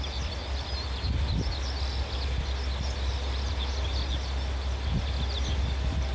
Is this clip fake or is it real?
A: real